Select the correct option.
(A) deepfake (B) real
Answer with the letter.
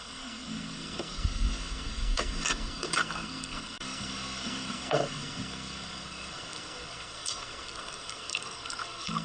A